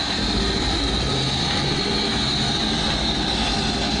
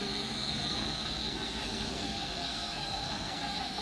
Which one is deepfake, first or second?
second